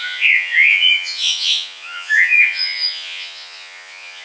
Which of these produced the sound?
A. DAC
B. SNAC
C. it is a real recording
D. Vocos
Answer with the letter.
D